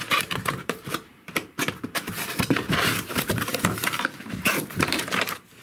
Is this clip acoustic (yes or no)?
no